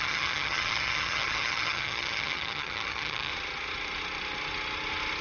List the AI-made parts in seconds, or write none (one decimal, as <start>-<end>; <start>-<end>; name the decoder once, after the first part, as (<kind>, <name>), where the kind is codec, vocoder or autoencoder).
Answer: 0.0-3.3 (vocoder, HiFi-GAN)